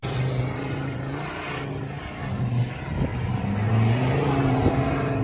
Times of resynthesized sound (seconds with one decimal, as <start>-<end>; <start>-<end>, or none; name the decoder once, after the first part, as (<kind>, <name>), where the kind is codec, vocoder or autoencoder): 0.0-2.0 (vocoder, BigVGAN v2); 3.1-3.7